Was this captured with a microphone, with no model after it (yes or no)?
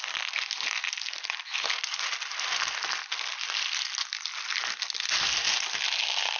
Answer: yes